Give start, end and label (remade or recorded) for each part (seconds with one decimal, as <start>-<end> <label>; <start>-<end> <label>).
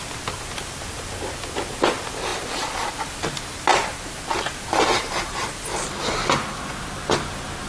0.0-7.7 recorded